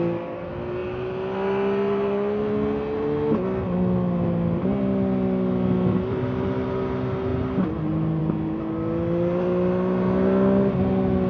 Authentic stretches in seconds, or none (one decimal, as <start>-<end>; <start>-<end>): 0.0-11.3